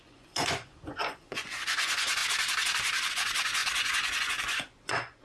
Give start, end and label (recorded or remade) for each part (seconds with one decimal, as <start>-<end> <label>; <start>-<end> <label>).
0.0-2.2 remade; 2.2-3.1 recorded; 3.1-5.2 remade